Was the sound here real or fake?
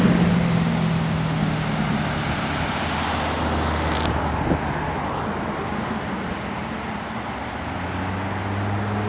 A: real